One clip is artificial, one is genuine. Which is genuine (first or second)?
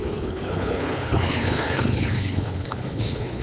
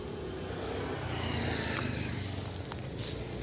second